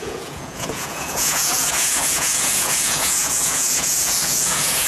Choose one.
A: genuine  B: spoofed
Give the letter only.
B